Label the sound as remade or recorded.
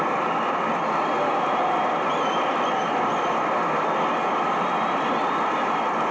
recorded